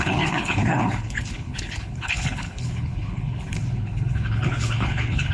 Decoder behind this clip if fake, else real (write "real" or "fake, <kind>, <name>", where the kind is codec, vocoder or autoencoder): fake, codec, HILCodec